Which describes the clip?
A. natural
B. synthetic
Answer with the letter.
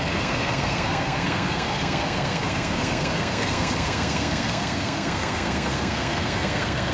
B